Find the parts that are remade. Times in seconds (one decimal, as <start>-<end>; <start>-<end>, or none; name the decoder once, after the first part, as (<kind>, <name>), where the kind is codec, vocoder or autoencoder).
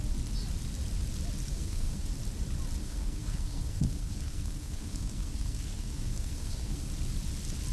1.5-2.1 (codec, SNAC); 2.8-6.9